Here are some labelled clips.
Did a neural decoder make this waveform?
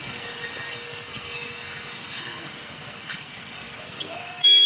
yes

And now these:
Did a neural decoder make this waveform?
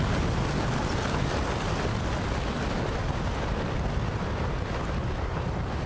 no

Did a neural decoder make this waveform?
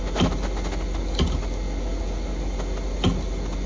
no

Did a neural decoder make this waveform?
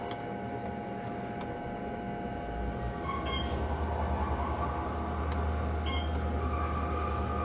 no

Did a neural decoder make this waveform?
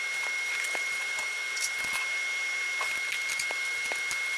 no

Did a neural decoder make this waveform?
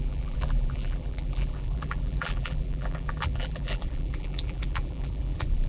yes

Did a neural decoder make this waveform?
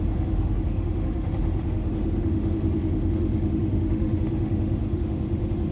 yes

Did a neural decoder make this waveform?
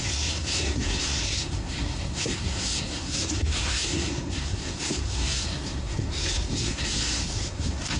yes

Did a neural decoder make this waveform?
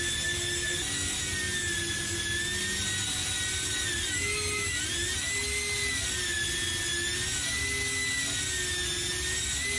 no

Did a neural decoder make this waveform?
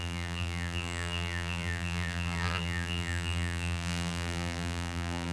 yes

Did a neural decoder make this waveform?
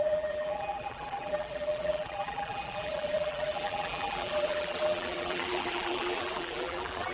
yes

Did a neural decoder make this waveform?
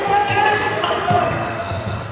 yes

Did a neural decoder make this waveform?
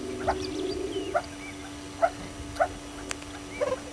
no